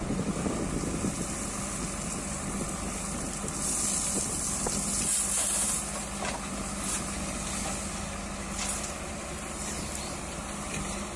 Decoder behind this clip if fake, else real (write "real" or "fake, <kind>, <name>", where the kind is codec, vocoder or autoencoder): real